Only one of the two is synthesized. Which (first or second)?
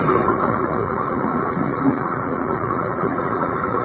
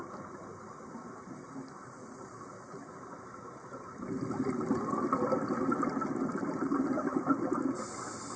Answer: first